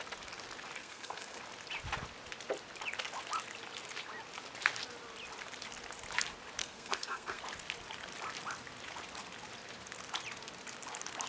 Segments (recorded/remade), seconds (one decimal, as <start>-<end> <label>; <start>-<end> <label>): 0.0-0.8 recorded; 0.8-1.4 remade; 1.4-6.6 recorded; 6.6-7.4 remade; 7.4-11.3 recorded